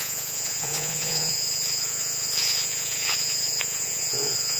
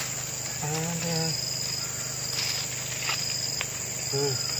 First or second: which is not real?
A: first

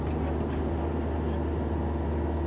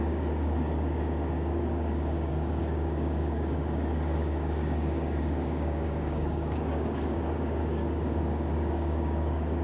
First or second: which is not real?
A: second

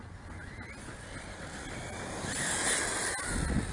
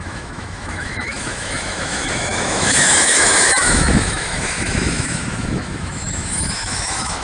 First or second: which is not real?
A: second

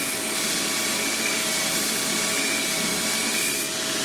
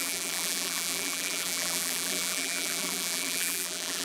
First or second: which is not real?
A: second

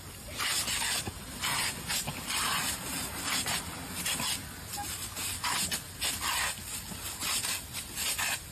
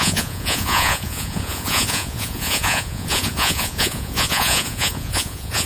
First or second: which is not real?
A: second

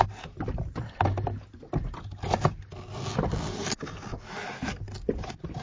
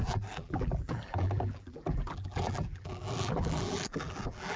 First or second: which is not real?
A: second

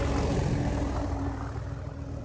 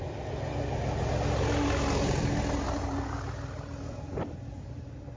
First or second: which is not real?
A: first